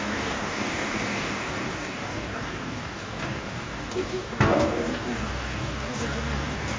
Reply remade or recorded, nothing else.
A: remade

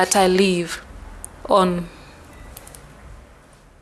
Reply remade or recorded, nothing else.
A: recorded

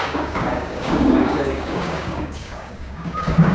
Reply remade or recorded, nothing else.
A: remade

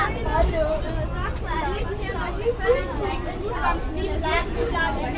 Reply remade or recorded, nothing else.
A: recorded